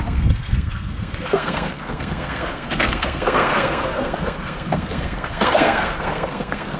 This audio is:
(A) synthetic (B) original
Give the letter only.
A